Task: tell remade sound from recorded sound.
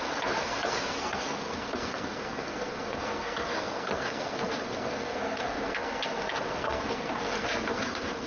remade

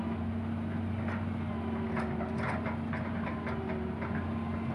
recorded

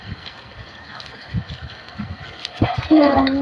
remade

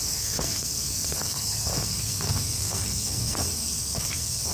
remade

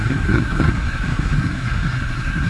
remade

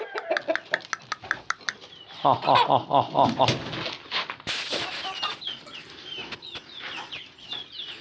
recorded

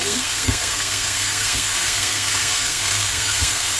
remade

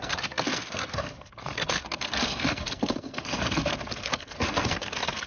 remade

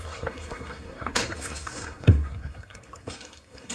remade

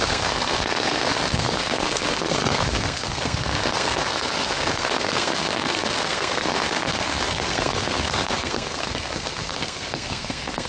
remade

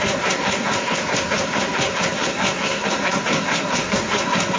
remade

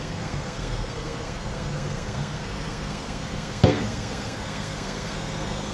remade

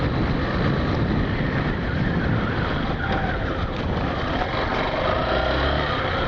recorded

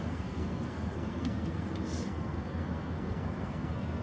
remade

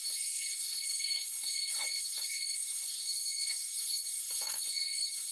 remade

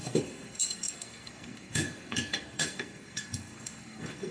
remade